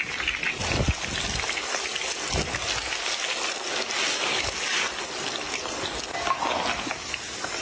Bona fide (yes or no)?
yes